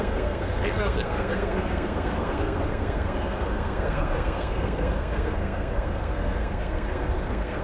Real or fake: fake